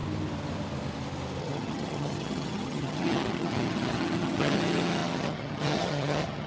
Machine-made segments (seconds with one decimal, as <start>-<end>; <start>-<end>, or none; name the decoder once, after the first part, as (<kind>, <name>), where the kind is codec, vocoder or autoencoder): 1.4-6.5 (vocoder, HiFi-GAN)